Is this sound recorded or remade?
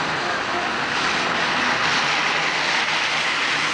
recorded